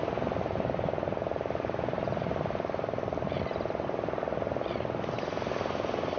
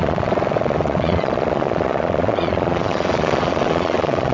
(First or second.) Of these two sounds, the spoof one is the second